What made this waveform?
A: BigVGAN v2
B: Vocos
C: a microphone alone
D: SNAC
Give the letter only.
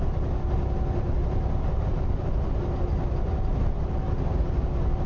C